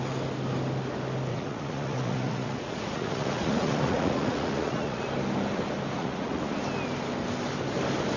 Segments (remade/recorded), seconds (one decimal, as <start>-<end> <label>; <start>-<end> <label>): 0.0-1.3 recorded; 1.3-5.0 remade; 5.0-6.0 recorded; 6.0-6.6 remade; 6.6-8.2 recorded